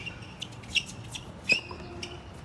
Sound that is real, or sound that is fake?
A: real